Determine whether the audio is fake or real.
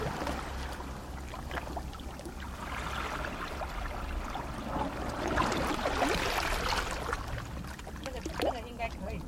real